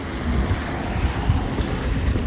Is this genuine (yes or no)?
no